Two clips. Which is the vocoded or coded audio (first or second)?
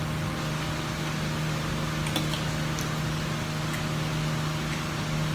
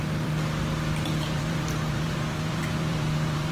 second